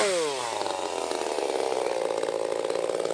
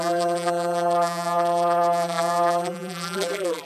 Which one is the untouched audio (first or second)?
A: first